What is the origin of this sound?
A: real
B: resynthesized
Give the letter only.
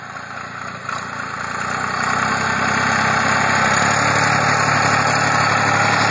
A